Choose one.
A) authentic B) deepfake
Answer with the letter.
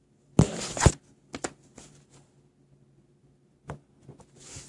A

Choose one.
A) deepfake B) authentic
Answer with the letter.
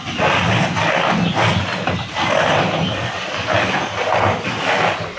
B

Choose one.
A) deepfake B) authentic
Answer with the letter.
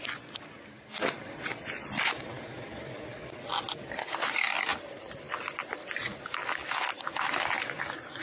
B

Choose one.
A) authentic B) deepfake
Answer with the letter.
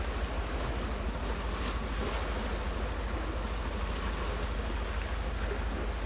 A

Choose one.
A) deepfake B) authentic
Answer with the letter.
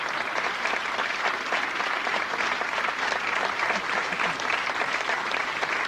A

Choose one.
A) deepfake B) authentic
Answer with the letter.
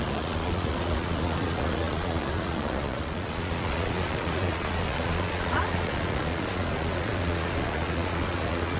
A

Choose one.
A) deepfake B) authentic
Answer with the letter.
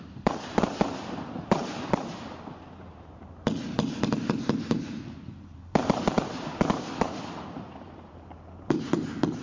A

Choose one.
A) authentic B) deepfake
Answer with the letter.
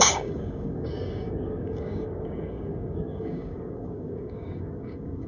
B